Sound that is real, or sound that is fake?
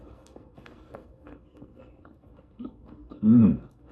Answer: fake